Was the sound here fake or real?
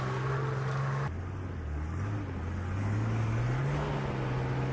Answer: real